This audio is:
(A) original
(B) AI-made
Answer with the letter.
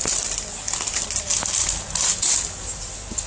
A